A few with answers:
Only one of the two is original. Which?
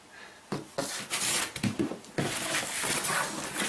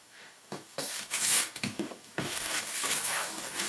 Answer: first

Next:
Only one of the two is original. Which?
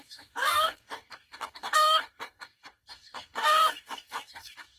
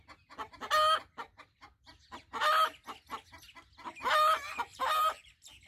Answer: second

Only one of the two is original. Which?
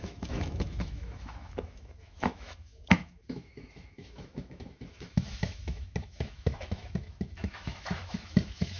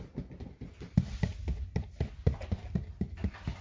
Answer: second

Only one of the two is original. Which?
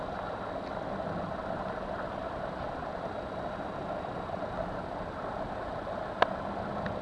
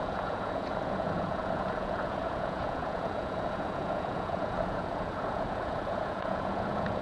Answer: first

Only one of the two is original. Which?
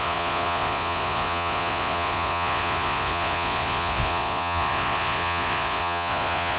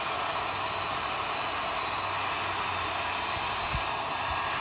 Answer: second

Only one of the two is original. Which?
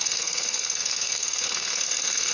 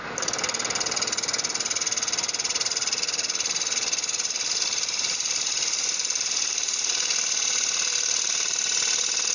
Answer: second